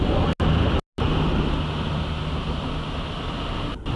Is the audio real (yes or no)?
yes